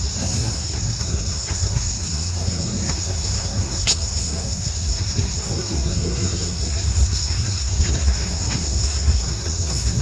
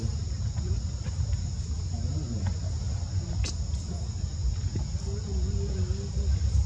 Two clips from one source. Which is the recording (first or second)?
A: second